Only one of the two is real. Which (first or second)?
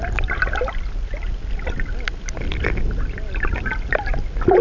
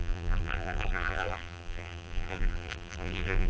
first